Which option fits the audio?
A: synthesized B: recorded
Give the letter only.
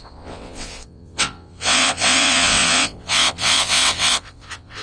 A